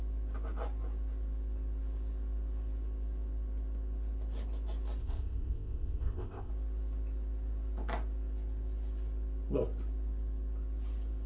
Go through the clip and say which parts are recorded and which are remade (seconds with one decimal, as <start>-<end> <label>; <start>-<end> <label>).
0.0-5.0 recorded; 5.0-6.5 remade; 6.5-11.3 recorded